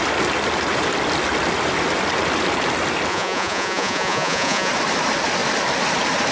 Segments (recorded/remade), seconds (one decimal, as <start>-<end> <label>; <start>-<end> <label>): 0.0-3.1 recorded; 3.1-4.7 remade; 4.7-6.3 recorded